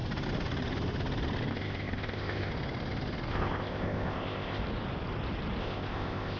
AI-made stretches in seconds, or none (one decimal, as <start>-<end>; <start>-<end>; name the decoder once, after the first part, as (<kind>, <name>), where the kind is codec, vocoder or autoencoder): 1.5-2.5 (codec, ZipCodec); 3.3-4.6; 5.6-6.4